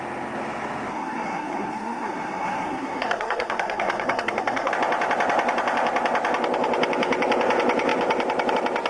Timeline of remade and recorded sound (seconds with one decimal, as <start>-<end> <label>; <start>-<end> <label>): 0.0-0.9 recorded; 0.9-4.7 remade; 4.7-8.9 recorded